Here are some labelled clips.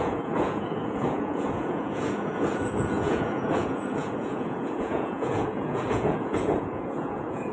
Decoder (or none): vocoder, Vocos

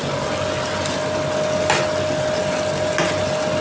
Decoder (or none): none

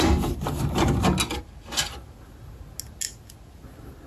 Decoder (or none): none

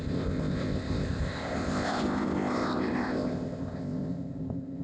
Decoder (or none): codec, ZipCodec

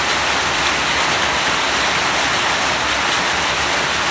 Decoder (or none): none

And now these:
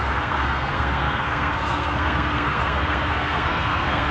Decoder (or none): codec, SNAC